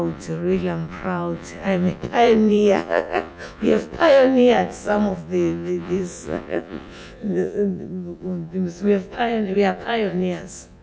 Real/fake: fake